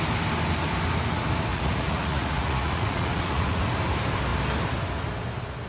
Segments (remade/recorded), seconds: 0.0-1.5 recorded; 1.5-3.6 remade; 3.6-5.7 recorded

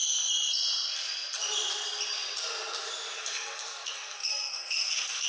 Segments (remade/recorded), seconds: 0.0-3.2 recorded; 3.2-5.3 remade

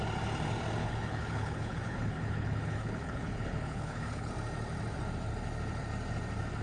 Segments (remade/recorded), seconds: 0.0-0.8 recorded; 0.8-4.3 remade; 4.3-6.6 recorded

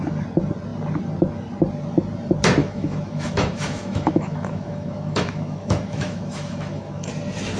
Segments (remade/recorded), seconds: 0.0-2.6 recorded; 2.6-7.1 remade; 7.1-7.6 recorded

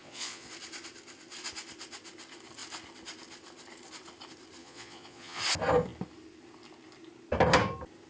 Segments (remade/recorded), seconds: 0.0-0.5 remade; 0.5-4.6 recorded; 4.6-5.4 remade; 5.4-8.1 recorded